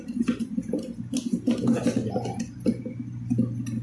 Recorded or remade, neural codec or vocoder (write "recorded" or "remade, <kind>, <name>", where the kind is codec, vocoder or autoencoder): recorded